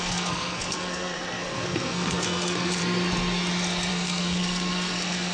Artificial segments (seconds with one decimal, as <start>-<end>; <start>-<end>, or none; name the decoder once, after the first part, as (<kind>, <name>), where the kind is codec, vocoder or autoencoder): 0.0-2.8 (codec, SNAC); 3.9-5.3